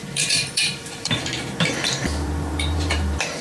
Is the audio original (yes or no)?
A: no